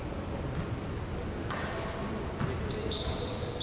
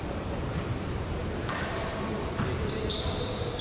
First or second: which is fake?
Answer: second